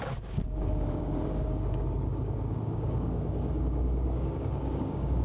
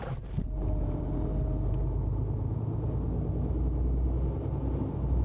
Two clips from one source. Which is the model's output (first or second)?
first